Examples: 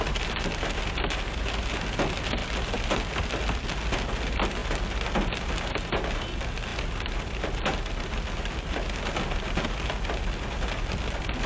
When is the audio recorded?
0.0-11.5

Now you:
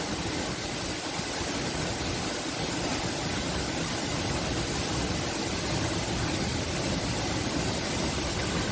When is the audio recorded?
0.0-8.7

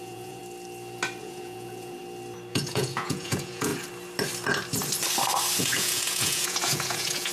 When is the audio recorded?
0.4-1.2; 2.0-2.5; 3.7-5.6

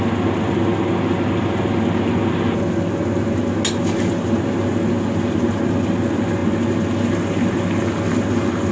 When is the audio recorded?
0.0-8.7

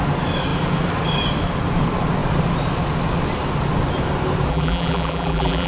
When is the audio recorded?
0.0-4.5

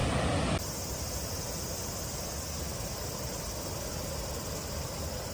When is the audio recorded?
0.0-2.6